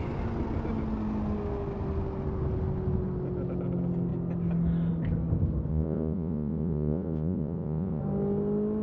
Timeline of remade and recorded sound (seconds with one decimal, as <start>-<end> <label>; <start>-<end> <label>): 0.0-5.7 recorded; 5.7-8.0 remade; 8.0-8.8 recorded